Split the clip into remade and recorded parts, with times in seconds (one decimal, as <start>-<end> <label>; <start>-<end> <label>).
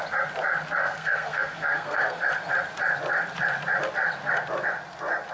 0.0-0.8 recorded; 0.8-2.2 remade; 2.2-5.3 recorded